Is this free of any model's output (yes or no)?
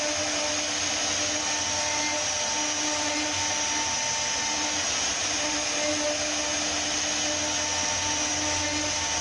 yes